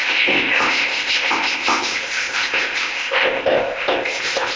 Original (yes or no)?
no